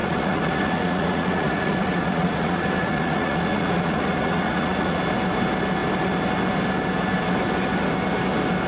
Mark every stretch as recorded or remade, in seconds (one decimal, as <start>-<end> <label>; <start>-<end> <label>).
0.0-5.0 remade; 5.0-8.7 recorded